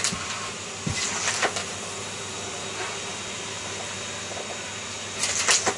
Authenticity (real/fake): real